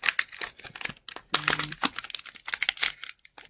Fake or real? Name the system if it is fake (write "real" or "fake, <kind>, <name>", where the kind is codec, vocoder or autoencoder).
real